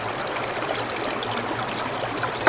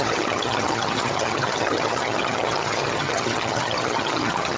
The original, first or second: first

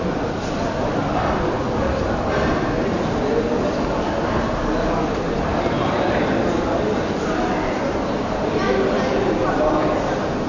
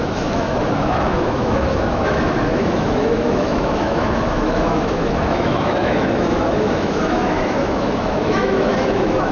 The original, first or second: first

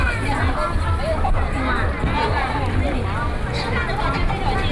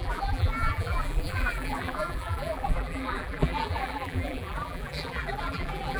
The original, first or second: first